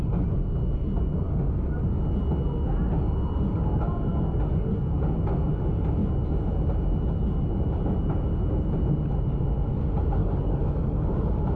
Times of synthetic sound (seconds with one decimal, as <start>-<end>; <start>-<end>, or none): 10.2-11.1